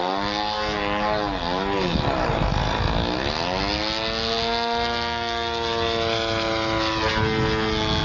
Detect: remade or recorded recorded